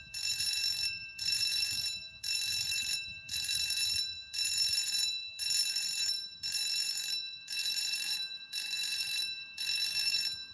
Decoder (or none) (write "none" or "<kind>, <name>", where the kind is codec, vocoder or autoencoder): vocoder, BigVGAN v2